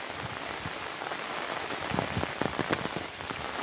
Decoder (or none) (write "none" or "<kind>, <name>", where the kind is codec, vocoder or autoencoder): none